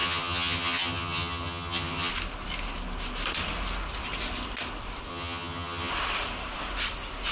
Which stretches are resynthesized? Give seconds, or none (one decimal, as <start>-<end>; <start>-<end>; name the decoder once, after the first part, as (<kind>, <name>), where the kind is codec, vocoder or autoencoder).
0.0-2.1 (vocoder, HiFi-GAN); 5.1-5.9